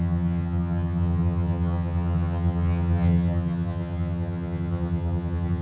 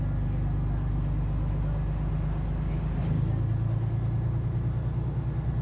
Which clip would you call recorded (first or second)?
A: second